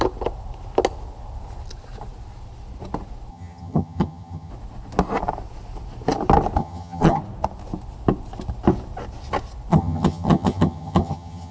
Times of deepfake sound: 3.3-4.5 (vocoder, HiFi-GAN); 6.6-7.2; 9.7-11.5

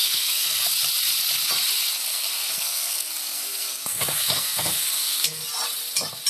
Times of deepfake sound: 0.0-0.7 (codec, SNAC); 2.1-5.4

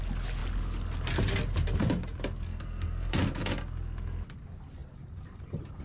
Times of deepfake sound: 2.5-3.1 (codec, SNAC)